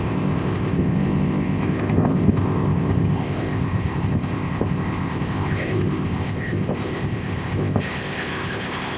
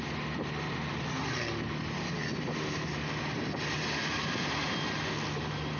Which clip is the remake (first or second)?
first